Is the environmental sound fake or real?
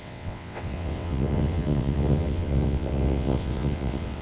fake